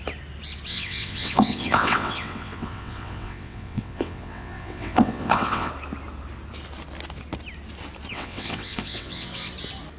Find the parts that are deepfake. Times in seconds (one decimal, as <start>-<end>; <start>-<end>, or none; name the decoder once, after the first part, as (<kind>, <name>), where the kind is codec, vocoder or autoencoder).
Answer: 0.7-5.7 (vocoder, WaveNeXt); 8.1-9.5